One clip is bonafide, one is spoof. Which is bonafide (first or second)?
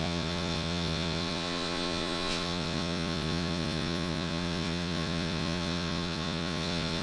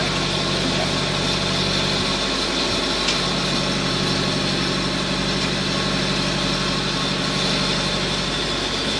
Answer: second